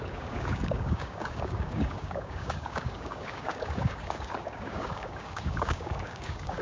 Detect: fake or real fake